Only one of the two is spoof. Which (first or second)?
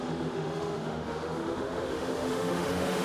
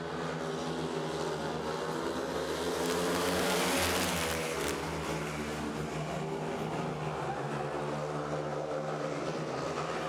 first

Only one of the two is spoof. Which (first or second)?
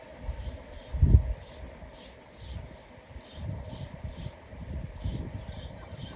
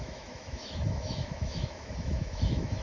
second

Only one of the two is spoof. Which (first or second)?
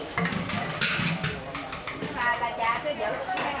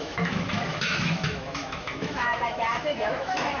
second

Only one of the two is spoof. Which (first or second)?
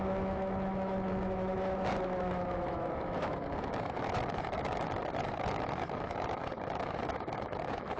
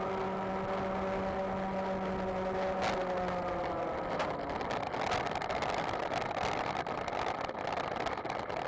first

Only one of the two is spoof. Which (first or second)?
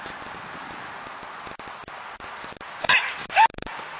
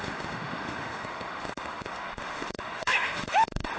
second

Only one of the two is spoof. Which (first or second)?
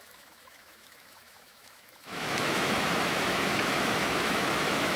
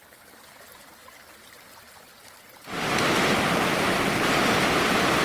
first